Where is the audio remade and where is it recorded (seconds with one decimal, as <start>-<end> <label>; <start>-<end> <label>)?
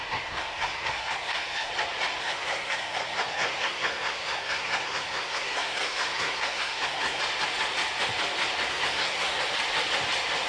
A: 0.0-1.7 remade; 1.7-2.2 recorded; 2.2-7.2 remade; 7.2-8.7 recorded; 8.7-9.4 remade; 9.4-10.5 recorded